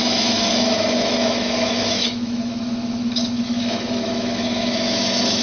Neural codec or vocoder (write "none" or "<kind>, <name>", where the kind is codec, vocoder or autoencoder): autoencoder, DAC-VAE